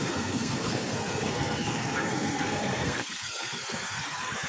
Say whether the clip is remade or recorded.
remade